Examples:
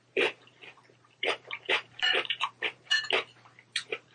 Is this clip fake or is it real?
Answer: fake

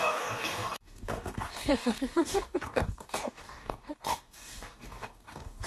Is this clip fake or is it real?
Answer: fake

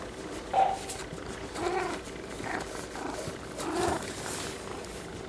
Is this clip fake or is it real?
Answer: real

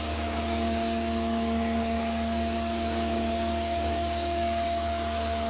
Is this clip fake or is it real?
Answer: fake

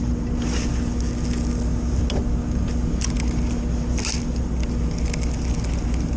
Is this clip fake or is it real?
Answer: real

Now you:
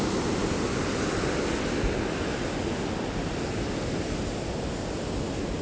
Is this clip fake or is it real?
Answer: real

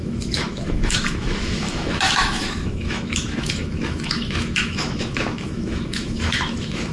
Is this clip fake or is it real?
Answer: fake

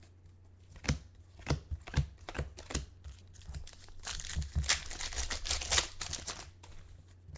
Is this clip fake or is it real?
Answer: real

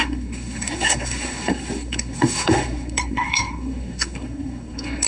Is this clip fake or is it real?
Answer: fake